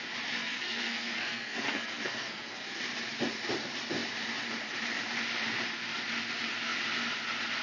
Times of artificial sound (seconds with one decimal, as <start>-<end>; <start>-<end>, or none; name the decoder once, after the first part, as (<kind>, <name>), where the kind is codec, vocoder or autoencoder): 0.4-2.8 (codec, SNAC)